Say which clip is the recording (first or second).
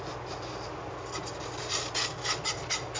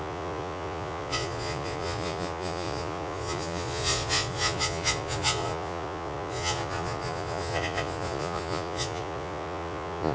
first